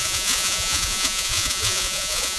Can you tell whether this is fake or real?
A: fake